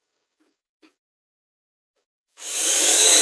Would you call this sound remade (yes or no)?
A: yes